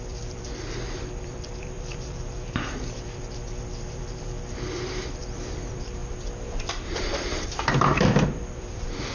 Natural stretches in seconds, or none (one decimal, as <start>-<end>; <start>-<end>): 6.0-6.7